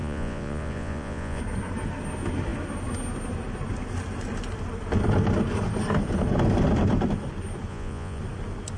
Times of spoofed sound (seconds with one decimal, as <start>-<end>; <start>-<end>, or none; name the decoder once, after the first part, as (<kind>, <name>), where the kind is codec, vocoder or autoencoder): 0.0-1.4 (vocoder, Vocos); 7.7-8.2